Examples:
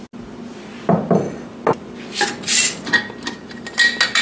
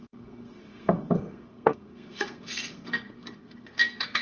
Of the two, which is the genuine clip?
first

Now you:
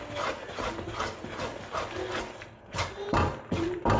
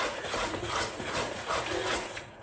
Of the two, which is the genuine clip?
first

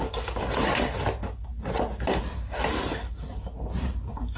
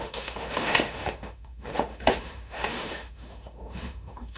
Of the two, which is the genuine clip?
first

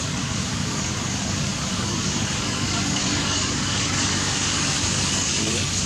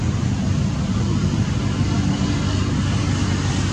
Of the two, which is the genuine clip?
second